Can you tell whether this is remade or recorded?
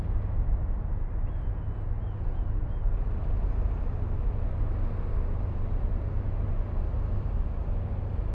recorded